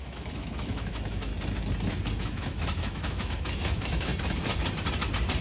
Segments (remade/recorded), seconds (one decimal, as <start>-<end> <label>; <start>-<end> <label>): 0.0-1.3 remade; 1.3-2.2 recorded; 2.2-4.1 remade; 4.1-5.4 recorded